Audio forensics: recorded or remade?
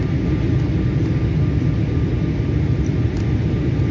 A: recorded